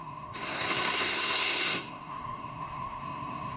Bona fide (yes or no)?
no